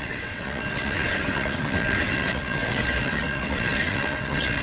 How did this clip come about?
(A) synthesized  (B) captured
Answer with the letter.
A